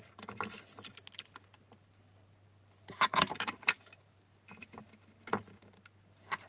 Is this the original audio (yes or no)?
yes